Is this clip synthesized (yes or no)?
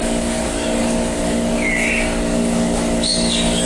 yes